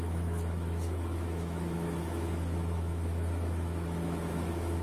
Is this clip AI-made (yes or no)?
yes